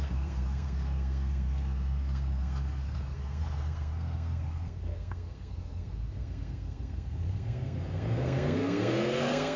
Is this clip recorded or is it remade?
remade